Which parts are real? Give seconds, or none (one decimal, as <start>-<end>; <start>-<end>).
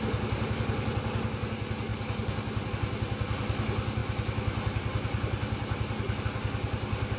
0.0-7.2